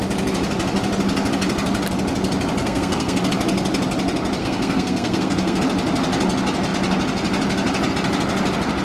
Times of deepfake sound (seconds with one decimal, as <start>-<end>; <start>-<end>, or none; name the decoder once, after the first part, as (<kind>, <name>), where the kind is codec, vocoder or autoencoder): 2.6-3.2 (codec, SNAC); 4.4-5.6